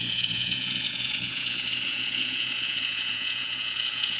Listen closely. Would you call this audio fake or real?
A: fake